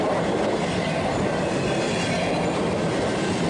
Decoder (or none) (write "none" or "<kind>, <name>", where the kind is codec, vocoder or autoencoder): none